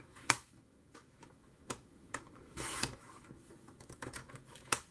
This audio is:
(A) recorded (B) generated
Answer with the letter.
B